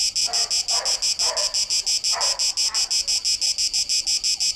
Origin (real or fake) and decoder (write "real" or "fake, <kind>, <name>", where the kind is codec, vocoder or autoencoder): real